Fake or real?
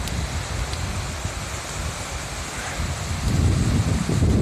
real